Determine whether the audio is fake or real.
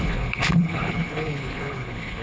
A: fake